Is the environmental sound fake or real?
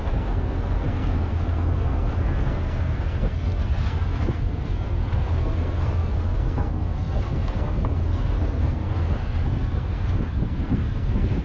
fake